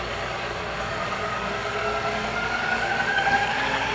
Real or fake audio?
fake